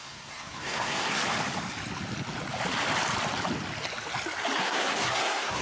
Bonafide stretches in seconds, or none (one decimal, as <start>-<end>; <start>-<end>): 1.2-4.6